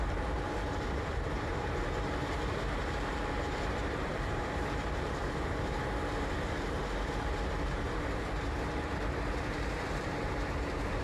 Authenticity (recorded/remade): remade